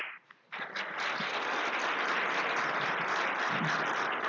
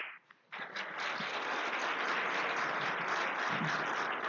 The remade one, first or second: first